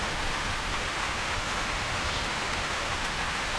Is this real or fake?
fake